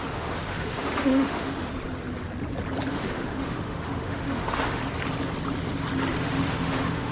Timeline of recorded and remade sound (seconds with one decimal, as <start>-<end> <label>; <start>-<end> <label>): 0.0-1.7 remade; 1.7-2.9 recorded; 2.9-4.8 remade; 4.8-6.2 recorded; 6.2-7.1 remade

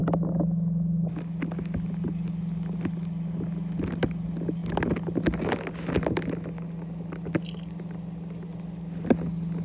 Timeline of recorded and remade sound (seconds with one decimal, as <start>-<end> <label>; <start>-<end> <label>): 0.0-9.6 recorded

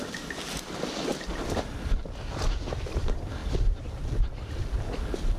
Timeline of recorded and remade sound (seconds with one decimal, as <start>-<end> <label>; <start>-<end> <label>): 0.0-5.4 recorded

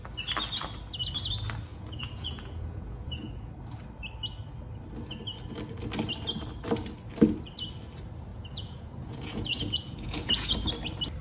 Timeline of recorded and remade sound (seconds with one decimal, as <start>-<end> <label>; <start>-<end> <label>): 0.0-1.7 recorded; 1.7-3.5 remade; 3.5-8.3 recorded; 8.3-10.7 remade; 10.7-11.2 recorded

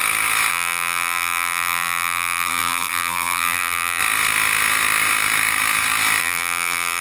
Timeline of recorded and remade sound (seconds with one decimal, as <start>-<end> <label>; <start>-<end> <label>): 0.0-0.5 recorded; 0.5-4.0 remade; 4.0-6.2 recorded; 6.2-7.0 remade

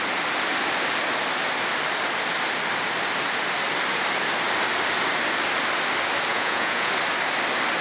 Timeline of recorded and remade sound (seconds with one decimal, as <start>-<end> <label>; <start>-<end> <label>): 0.0-6.3 recorded; 6.3-6.9 remade; 6.9-7.8 recorded

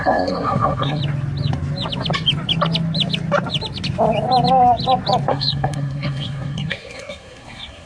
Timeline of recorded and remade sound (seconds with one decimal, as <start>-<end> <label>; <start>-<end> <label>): 0.0-1.0 remade; 1.0-5.3 recorded; 5.3-7.9 remade